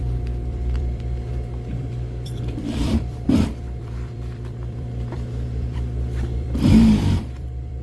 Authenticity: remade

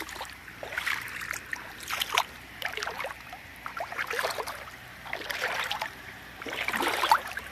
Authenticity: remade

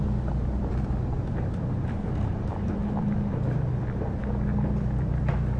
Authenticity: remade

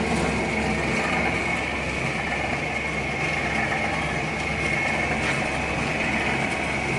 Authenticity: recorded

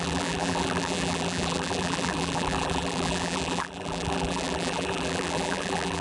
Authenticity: remade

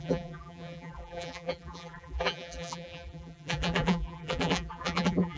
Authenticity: remade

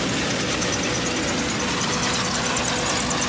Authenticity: recorded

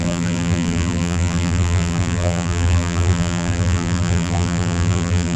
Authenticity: remade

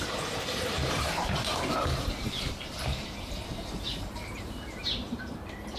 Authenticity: remade